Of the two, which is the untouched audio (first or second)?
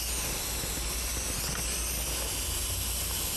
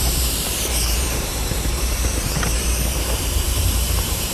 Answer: first